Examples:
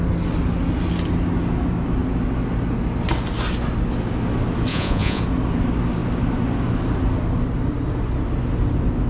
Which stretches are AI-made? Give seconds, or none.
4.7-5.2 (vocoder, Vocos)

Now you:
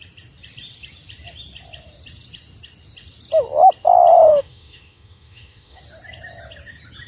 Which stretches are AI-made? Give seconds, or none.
4.3-5.8 (autoencoder, DAC-VAE)

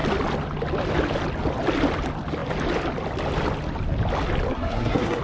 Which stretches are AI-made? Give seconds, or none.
4.5-5.2 (codec, SNAC)

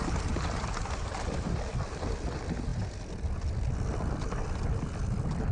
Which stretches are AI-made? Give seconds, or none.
0.0-2.7 (vocoder, BigVGAN v2); 4.2-5.5

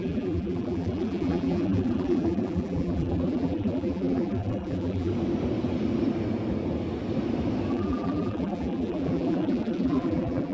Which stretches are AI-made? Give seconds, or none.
0.0-5.1 (vocoder, BigVGAN v2); 7.7-10.5

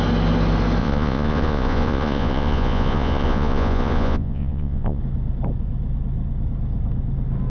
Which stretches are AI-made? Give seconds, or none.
0.8-5.0 (vocoder, Vocos)

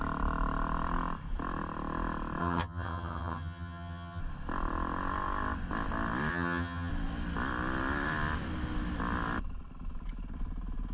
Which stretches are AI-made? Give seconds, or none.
2.4-4.2 (vocoder, HiFi-GAN); 6.3-6.9

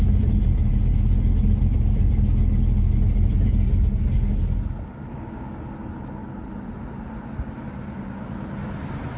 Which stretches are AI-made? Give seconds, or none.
4.9-5.6 (codec, DAC)